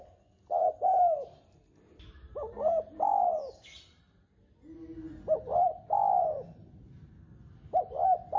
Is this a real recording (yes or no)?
yes